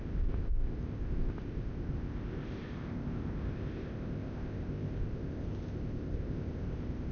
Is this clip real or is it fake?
fake